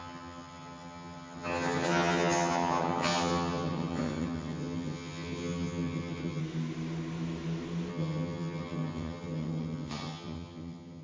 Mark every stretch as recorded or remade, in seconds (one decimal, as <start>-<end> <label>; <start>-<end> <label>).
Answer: 0.0-6.4 remade; 6.4-7.9 recorded; 7.9-11.0 remade